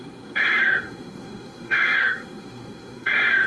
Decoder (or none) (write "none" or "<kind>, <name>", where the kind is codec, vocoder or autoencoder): codec, SNAC